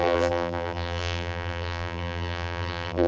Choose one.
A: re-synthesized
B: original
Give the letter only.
A